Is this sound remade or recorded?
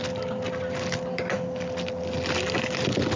recorded